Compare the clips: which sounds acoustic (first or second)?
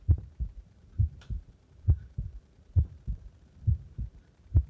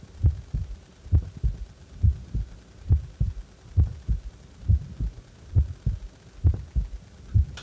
second